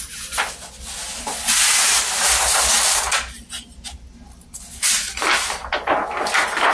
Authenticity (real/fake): real